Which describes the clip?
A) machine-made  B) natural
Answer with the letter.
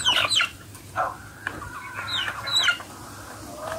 B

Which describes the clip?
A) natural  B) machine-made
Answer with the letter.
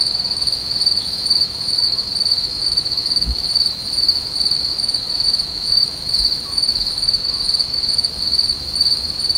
B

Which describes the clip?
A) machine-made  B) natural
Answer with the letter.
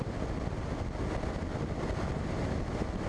B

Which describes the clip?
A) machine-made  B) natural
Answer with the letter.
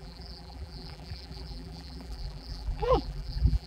A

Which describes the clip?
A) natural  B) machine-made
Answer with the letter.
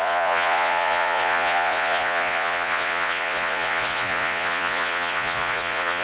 B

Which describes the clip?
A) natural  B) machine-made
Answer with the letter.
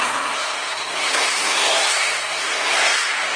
B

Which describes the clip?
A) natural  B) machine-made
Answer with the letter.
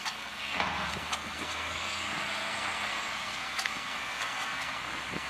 B